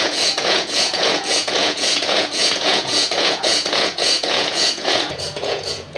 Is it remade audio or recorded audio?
remade